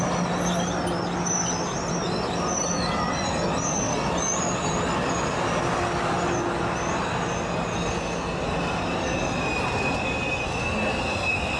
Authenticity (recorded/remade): recorded